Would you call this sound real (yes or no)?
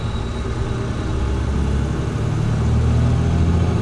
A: yes